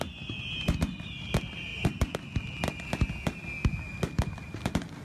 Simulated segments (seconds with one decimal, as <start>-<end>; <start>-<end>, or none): none

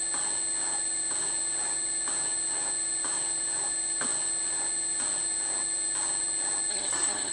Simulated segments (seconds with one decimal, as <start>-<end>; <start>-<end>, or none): 6.7-7.3

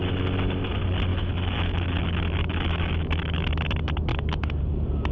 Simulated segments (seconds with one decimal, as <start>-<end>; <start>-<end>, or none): 1.1-3.5; 4.1-4.6

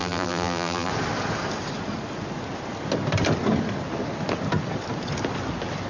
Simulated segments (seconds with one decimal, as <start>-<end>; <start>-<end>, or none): 0.0-0.9

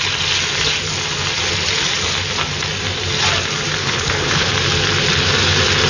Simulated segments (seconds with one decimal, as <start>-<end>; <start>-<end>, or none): 3.8-4.5

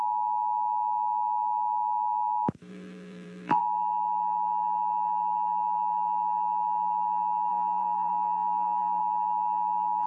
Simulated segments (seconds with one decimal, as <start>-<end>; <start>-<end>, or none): 2.7-3.6; 7.5-9.0